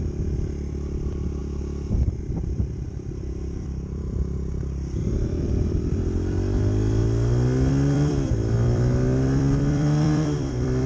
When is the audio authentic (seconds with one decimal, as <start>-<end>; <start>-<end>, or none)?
1.4-2.2; 7.0-7.7